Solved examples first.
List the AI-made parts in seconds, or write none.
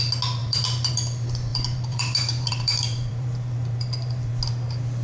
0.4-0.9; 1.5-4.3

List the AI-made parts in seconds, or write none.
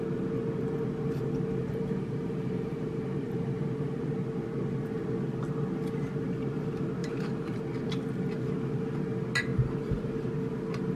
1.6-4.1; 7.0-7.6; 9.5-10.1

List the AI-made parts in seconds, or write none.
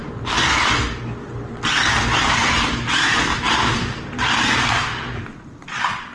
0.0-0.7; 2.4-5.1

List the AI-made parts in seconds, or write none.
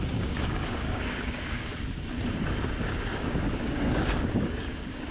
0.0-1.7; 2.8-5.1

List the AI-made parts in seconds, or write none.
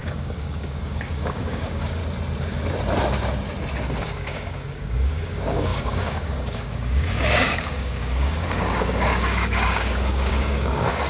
0.0-2.0; 4.0-11.1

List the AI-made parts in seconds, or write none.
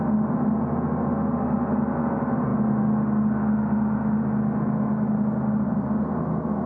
none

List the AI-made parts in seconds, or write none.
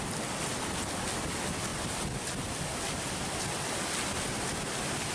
none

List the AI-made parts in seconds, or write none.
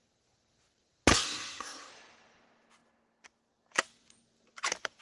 1.1-1.9